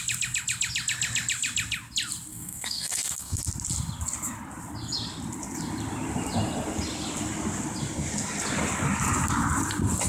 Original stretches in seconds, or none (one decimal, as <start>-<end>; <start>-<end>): 0.0-2.3; 3.4-10.1